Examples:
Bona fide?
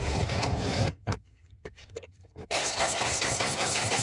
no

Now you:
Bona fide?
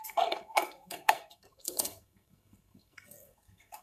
no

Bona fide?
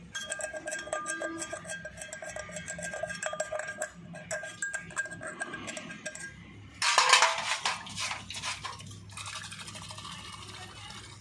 yes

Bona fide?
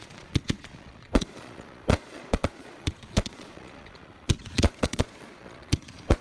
no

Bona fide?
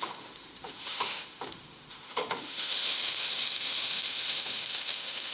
no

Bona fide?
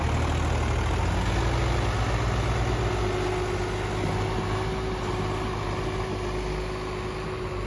yes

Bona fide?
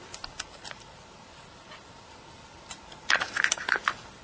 yes